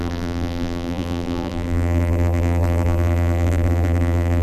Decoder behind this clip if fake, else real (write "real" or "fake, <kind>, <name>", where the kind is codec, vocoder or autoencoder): fake, vocoder, BigVGAN v2